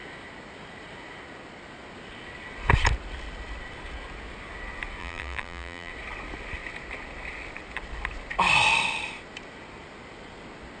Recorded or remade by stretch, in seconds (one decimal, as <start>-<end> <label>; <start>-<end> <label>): 0.0-5.0 recorded; 5.0-5.9 remade; 5.9-10.8 recorded